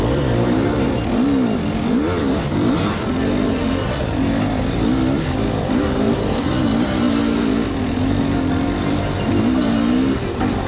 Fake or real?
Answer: real